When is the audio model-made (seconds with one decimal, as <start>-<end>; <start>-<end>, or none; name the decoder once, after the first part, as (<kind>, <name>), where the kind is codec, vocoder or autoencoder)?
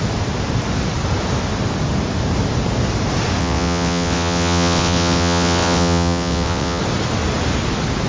3.4-6.8 (vocoder, WaveNeXt)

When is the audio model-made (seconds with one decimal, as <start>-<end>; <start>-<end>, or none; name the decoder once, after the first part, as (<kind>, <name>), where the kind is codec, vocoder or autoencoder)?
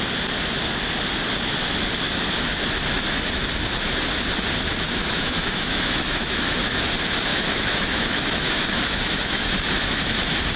5.0-6.6 (autoencoder, DAC-VAE); 7.3-10.0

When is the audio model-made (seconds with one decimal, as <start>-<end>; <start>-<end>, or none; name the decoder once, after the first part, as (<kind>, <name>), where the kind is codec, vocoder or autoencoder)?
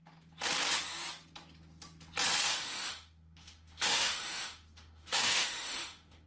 2.5-6.3 (autoencoder, DAC-VAE)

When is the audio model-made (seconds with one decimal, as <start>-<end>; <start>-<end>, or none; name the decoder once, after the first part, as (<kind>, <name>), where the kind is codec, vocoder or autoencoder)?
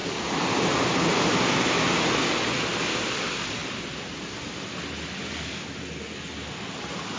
0.0-1.3 (vocoder, BigVGAN v2)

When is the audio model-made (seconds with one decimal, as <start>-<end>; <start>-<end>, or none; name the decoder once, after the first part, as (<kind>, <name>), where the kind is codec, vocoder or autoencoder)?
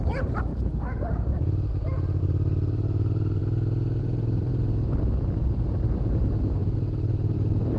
0.0-0.5 (vocoder, BigVGAN v2); 2.2-3.4; 4.0-4.5; 5.4-7.8